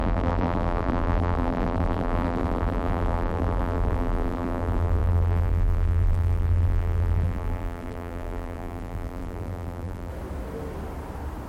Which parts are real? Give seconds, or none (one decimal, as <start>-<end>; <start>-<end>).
10.1-11.5